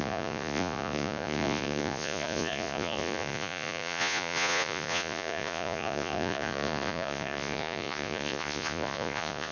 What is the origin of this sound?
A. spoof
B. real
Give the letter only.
A